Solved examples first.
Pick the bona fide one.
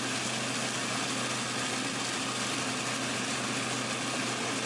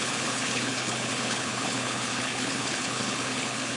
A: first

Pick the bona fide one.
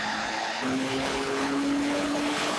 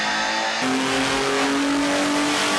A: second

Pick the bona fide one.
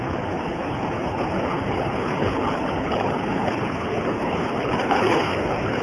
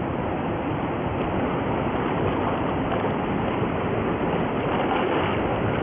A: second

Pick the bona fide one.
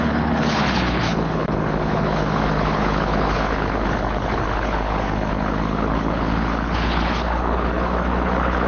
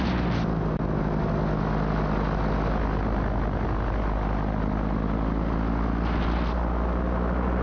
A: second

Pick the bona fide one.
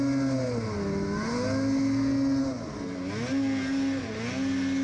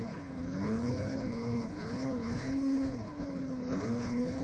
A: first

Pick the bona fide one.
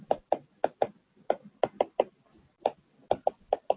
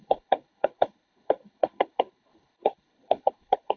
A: first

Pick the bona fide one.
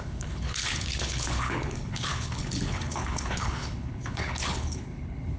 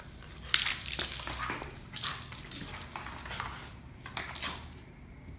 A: second